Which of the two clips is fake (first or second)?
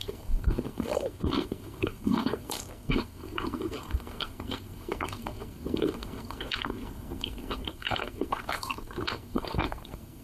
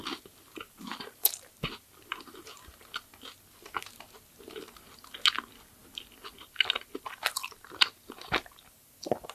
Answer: first